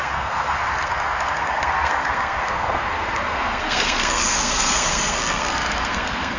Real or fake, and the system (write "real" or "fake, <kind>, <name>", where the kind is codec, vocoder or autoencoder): fake, codec, SNAC